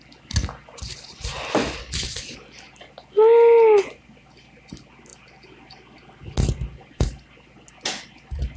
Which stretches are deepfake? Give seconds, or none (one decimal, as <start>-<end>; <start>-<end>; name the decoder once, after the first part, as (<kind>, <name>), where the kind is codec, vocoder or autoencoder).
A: none